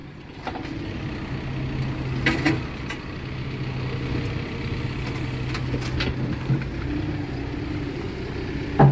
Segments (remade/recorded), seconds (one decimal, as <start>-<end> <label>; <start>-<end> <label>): 0.0-8.9 recorded